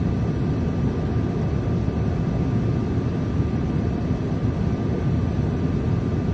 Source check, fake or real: real